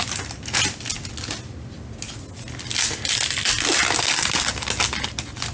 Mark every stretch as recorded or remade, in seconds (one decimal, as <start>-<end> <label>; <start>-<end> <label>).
0.0-5.5 recorded